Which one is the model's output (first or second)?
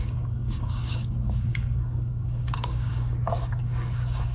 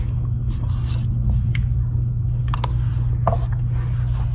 first